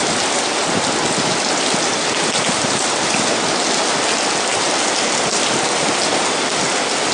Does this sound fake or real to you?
real